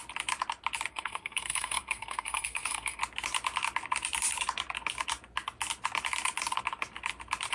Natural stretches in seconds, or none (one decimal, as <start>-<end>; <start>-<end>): 0.0-0.9; 3.0-7.5